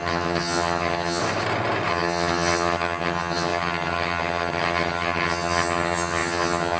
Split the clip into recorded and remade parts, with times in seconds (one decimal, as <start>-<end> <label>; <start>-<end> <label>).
0.0-1.2 remade; 1.2-1.9 recorded; 1.9-6.8 remade